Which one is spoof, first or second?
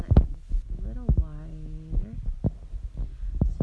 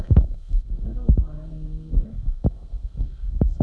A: second